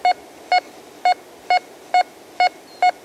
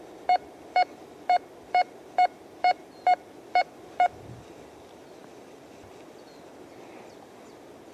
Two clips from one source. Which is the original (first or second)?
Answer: first